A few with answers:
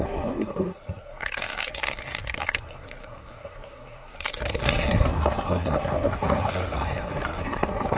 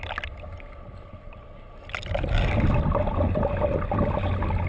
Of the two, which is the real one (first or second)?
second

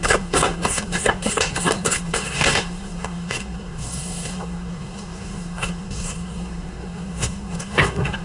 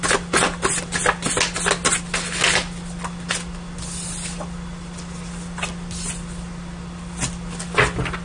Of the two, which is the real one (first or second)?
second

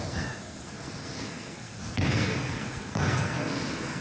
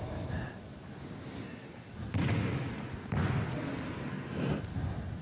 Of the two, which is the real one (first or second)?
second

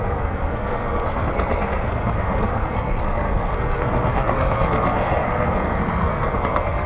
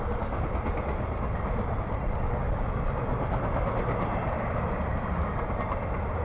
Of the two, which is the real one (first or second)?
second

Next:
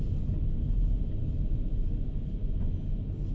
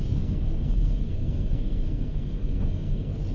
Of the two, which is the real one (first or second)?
first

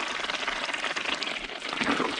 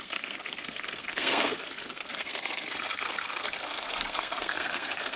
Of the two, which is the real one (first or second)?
first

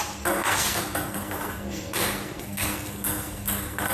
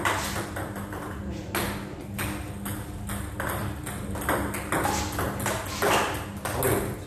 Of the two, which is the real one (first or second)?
second